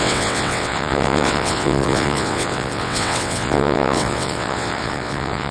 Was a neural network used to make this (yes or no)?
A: yes